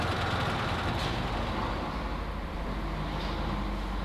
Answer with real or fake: real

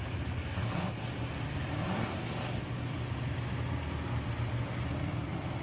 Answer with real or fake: real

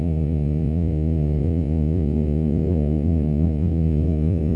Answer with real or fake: fake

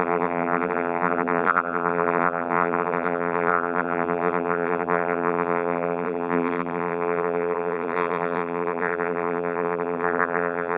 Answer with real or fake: fake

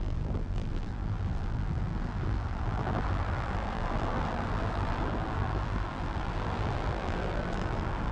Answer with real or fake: fake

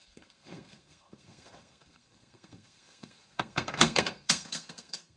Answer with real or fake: fake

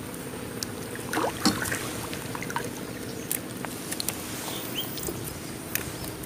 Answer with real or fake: real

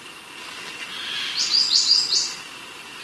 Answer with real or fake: real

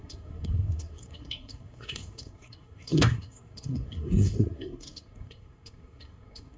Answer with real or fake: fake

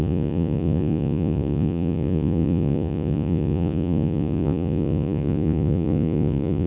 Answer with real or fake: fake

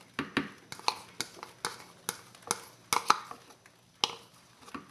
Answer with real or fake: real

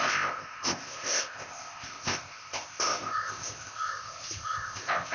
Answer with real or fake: fake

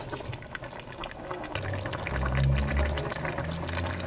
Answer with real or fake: real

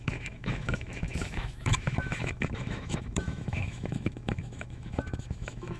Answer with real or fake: fake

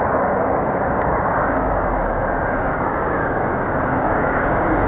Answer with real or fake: fake